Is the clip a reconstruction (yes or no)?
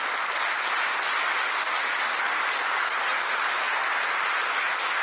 no